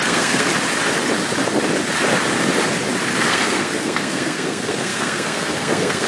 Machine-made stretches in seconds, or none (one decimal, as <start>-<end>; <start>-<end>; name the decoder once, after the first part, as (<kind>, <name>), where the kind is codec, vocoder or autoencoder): 0.0-0.5 (codec, SNAC); 3.2-6.1